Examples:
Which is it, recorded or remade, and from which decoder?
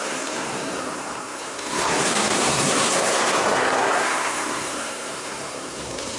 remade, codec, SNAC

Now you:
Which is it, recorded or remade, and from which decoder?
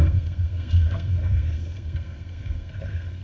remade, codec, SNAC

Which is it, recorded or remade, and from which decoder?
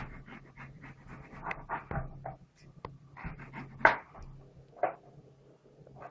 recorded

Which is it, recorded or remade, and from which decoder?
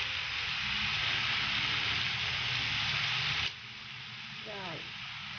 recorded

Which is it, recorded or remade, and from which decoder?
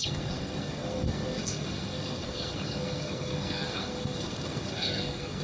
remade, codec, SNAC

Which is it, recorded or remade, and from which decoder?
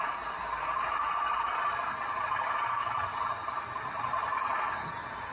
recorded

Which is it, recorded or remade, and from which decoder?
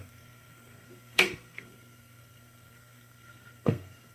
remade, codec, SNAC